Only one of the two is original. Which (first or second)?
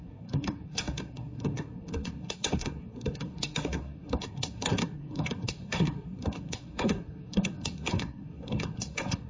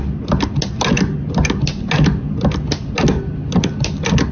second